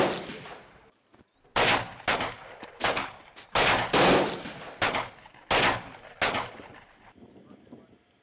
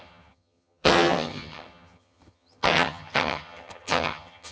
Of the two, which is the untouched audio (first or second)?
first